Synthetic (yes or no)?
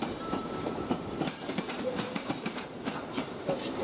yes